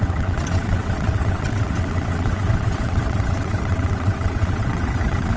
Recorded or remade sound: remade